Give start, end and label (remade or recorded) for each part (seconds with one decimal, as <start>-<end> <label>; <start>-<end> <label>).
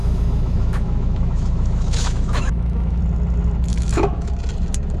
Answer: 0.0-3.0 remade; 3.0-3.7 recorded; 3.7-4.3 remade; 4.3-5.0 recorded